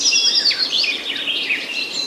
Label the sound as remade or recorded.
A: recorded